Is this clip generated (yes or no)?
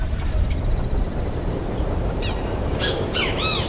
yes